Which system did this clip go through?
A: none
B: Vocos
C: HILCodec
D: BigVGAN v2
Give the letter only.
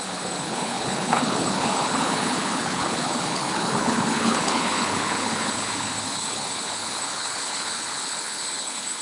C